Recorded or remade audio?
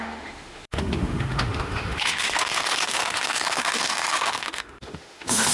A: remade